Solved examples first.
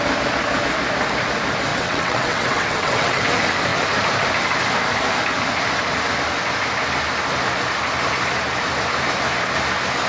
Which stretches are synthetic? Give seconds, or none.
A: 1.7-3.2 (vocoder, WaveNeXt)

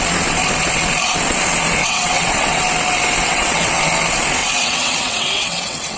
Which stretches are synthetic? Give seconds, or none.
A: 1.8-2.6 (vocoder, WaveNeXt); 3.2-3.8; 4.4-6.0

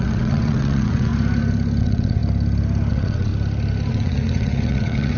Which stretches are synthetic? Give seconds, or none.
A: 0.0-1.1 (vocoder, WaveNeXt); 1.8-2.2; 2.9-3.3; 3.9-5.2